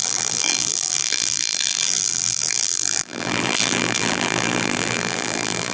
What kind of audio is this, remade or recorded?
remade